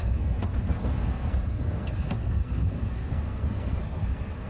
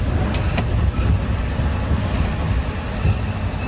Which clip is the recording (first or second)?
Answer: second